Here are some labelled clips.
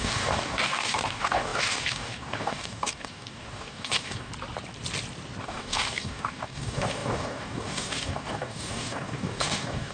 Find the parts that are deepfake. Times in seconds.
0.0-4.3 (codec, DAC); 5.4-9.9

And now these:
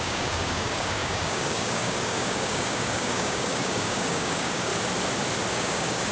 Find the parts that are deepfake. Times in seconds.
0.0-4.7 (codec, DAC); 5.5-6.1